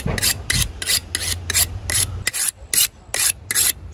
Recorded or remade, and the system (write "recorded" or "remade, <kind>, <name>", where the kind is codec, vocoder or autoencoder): recorded